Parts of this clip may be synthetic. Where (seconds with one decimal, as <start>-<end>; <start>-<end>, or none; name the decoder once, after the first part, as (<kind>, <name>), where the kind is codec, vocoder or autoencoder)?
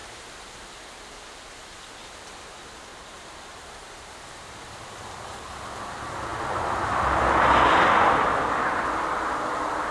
0.0-0.7 (vocoder, BigVGAN v2); 2.9-4.9